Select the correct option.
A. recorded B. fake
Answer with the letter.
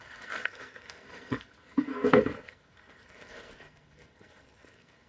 B